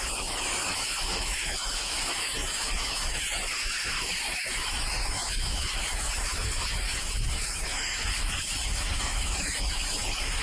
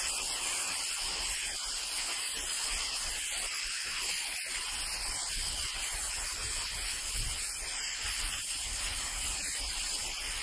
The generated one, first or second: first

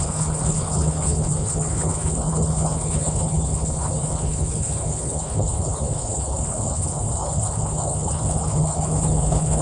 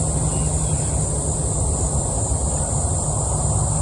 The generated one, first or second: first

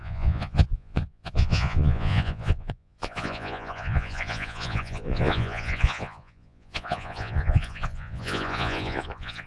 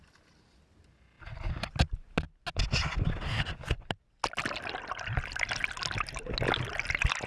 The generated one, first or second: first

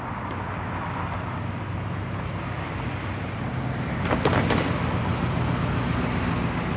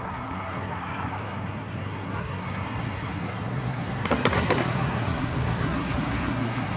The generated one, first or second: second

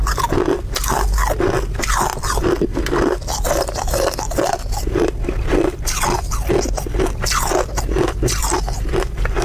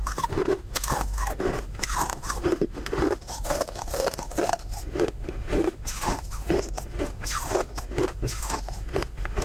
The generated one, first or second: second